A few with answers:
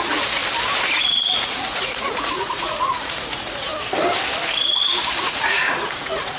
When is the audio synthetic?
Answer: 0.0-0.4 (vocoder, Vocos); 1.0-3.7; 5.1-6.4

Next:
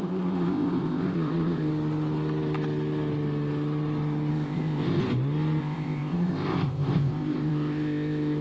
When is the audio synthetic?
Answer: 0.0-1.7 (codec, ZipCodec); 4.3-5.0; 5.6-8.4